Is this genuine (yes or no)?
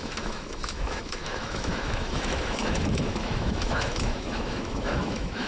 no